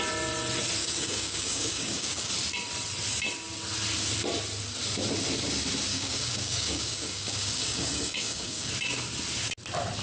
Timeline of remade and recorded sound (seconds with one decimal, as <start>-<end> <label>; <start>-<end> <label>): 0.0-0.8 recorded; 0.8-2.3 remade; 2.3-5.9 recorded; 5.9-8.7 remade; 8.7-10.0 recorded